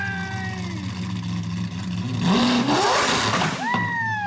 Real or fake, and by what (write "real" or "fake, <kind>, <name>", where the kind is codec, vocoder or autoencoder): real